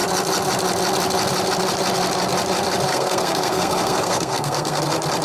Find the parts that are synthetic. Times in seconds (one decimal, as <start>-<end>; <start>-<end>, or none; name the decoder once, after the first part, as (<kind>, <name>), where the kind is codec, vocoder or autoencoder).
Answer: 2.9-4.8 (codec, SNAC)